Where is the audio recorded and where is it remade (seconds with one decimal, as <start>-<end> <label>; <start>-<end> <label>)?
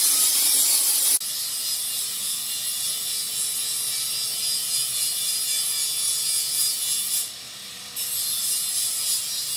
0.0-9.6 recorded